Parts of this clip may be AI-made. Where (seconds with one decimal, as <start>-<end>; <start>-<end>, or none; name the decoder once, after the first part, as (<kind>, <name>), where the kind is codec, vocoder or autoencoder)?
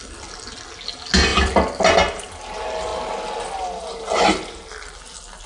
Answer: none